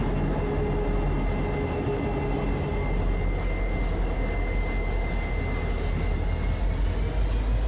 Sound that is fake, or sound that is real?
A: real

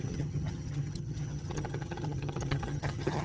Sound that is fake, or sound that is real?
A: fake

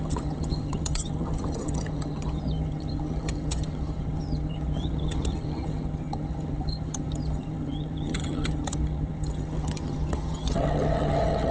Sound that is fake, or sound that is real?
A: fake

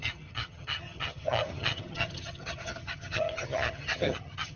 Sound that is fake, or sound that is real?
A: fake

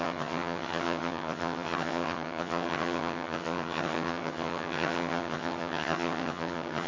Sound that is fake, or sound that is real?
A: fake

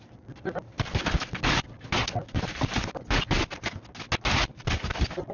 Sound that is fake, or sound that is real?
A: real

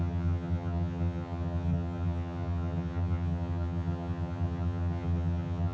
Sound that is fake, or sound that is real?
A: fake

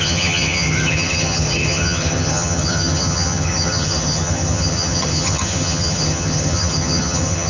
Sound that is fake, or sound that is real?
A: fake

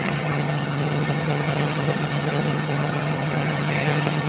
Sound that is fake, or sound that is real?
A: fake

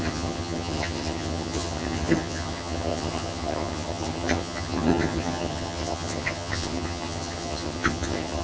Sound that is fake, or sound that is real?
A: fake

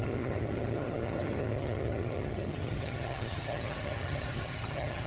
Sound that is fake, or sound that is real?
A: fake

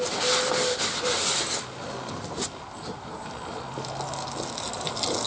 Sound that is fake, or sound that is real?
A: real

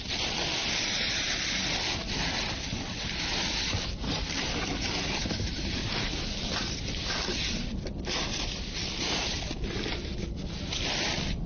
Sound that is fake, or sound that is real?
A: real